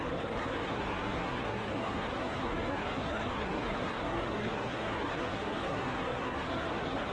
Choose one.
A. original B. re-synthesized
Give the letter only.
B